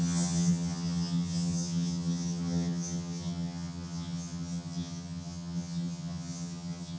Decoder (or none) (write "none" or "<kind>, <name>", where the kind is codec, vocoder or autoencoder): vocoder, HiFi-GAN